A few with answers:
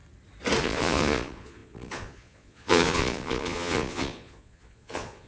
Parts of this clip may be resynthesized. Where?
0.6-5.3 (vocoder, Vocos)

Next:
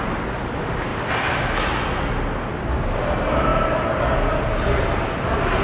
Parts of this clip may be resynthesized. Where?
none

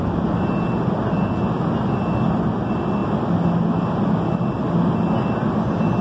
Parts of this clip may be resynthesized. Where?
none

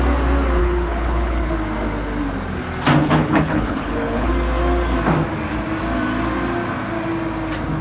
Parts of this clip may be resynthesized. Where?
0.6-1.5 (codec, HILCodec); 3.0-4.3